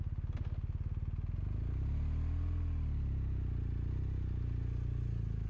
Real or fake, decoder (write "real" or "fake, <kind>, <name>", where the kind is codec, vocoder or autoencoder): real